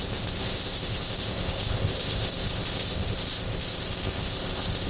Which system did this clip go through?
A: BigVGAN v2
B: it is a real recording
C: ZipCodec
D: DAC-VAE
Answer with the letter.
C